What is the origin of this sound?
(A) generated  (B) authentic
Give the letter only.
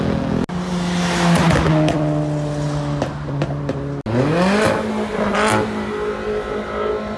B